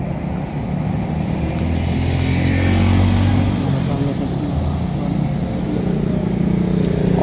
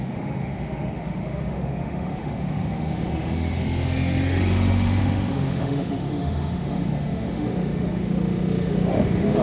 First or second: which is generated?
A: second